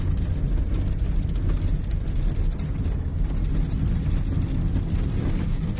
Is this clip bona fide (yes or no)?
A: yes